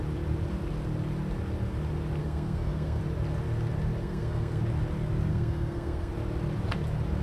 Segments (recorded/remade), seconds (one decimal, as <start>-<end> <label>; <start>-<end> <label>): 0.0-2.2 recorded; 2.2-3.0 remade; 3.0-4.0 recorded; 4.0-4.6 remade; 4.6-5.3 recorded; 5.3-6.1 remade; 6.1-7.2 recorded